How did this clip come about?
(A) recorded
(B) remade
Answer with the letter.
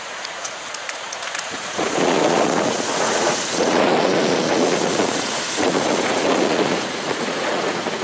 B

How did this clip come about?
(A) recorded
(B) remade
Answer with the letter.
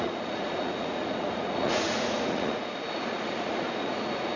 B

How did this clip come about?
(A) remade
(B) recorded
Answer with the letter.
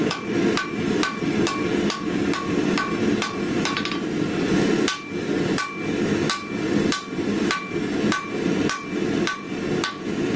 B